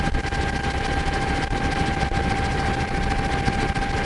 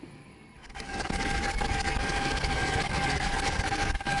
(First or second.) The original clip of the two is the first